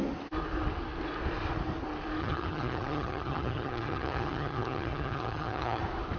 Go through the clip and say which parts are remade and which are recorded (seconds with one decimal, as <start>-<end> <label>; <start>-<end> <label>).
0.0-2.2 recorded; 2.2-5.8 remade; 5.8-6.2 recorded